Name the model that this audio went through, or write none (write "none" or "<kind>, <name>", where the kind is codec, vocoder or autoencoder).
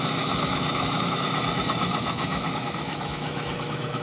autoencoder, DAC-VAE